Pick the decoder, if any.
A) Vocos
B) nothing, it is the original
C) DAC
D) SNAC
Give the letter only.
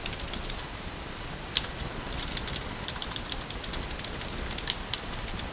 B